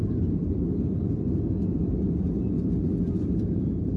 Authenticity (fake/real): real